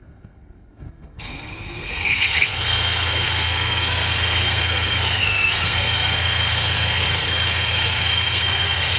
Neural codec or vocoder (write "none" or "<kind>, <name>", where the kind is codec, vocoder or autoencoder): codec, SNAC